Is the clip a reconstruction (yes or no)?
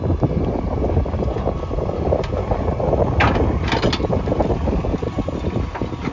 no